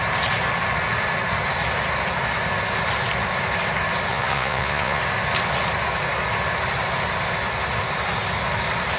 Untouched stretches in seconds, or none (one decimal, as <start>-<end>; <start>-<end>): 0.0-4.1; 5.0-9.0